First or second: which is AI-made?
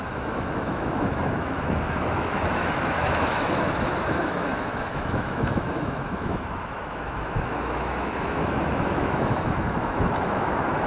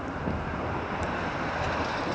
first